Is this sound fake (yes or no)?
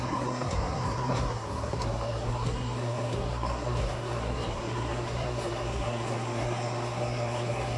yes